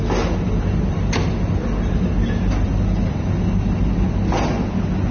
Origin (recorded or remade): recorded